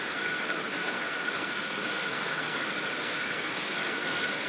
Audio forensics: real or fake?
fake